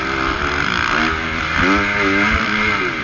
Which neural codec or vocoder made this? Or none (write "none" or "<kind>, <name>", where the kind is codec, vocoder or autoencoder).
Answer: none